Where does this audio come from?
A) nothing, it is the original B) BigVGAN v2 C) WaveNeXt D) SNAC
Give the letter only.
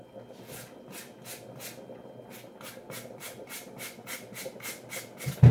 A